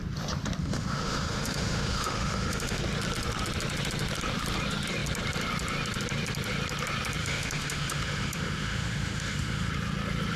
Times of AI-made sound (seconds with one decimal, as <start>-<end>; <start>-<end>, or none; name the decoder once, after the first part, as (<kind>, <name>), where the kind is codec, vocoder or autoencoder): 0.6-2.8 (autoencoder, DAC-VAE); 7.2-9.7